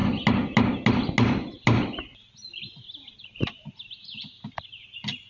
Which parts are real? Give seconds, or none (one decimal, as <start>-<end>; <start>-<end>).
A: 0.0-5.3